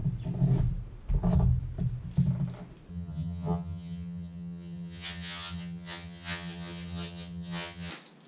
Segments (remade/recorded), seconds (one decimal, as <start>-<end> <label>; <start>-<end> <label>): 0.0-2.9 recorded; 2.9-7.9 remade; 7.9-8.3 recorded